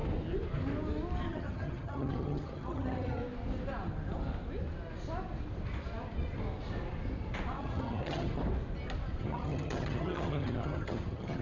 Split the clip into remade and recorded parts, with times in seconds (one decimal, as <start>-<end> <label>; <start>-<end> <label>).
0.0-1.3 recorded; 1.3-3.2 remade; 3.2-7.6 recorded; 7.6-8.4 remade; 8.4-9.2 recorded; 9.2-11.4 remade